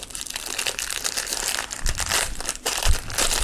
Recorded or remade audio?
recorded